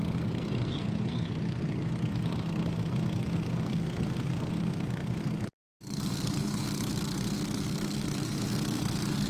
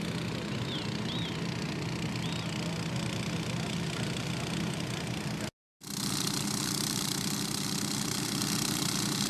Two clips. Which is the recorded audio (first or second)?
second